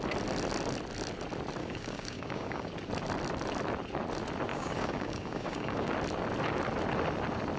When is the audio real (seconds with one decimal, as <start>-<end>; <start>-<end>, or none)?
0.0-1.6; 2.7-4.5; 5.9-7.6